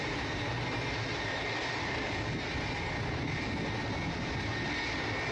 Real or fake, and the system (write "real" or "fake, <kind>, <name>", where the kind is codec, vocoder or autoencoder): real